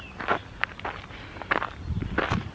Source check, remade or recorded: recorded